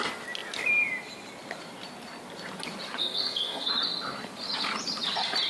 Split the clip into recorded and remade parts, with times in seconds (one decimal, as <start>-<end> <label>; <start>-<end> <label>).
0.0-3.0 recorded; 3.0-3.7 remade; 3.7-5.5 recorded